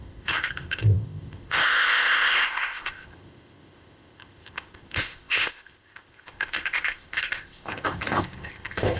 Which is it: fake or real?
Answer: fake